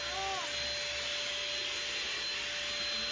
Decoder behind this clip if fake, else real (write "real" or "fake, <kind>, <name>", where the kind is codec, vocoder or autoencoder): real